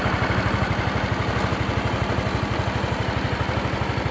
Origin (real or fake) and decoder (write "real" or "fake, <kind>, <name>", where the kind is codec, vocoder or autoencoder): real